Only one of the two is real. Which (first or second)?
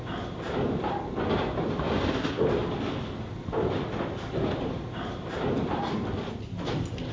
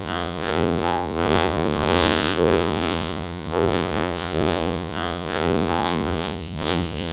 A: first